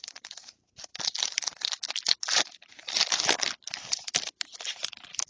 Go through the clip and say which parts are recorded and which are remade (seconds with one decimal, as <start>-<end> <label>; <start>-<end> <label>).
0.0-5.3 recorded